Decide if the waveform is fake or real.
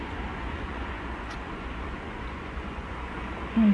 fake